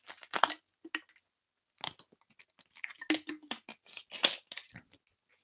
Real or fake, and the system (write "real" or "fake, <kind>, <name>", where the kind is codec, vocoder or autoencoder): real